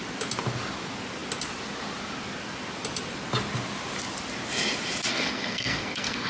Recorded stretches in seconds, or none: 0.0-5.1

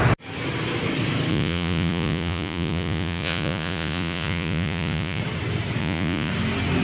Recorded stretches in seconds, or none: 0.0-1.3; 5.2-5.8; 6.3-6.8

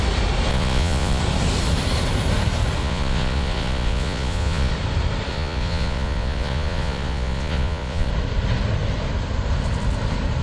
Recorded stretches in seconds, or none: 0.0-0.5; 1.2-2.8; 4.7-5.3; 8.1-10.4

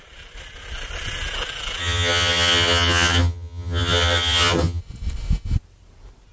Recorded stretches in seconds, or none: 0.0-1.8; 4.8-6.3